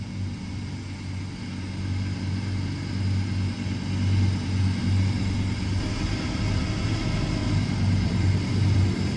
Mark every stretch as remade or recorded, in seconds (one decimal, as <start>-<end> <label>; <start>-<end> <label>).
0.0-7.4 recorded; 7.4-9.2 remade